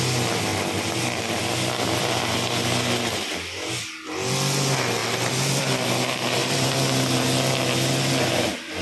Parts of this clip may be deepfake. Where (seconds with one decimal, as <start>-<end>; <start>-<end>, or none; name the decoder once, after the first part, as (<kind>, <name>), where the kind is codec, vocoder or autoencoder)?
0.5-2.2 (vocoder, BigVGAN v2); 5.0-5.6; 6.4-7.2